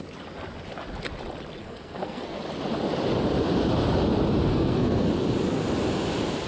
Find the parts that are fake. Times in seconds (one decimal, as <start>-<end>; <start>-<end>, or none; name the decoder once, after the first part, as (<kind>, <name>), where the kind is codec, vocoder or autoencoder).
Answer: 1.6-2.4 (codec, SNAC); 4.5-5.1